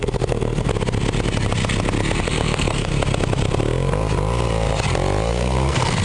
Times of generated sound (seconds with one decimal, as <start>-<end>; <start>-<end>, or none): 0.0-0.7; 2.2-2.9; 5.3-6.0